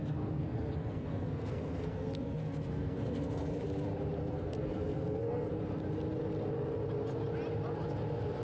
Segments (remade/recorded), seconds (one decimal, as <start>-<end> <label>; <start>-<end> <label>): 0.0-3.6 remade; 3.6-4.2 recorded; 4.2-5.6 remade; 5.6-8.4 recorded